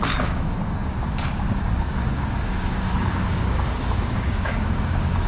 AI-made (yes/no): yes